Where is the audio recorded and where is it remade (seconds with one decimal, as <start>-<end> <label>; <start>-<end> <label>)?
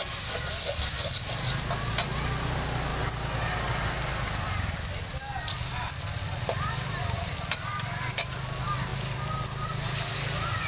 0.0-10.7 recorded